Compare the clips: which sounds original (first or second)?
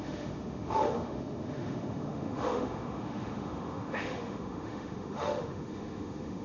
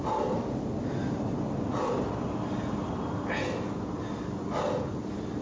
second